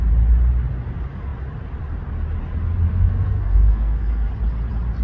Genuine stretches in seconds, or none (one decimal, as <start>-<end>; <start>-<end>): 0.0-2.9; 4.3-5.0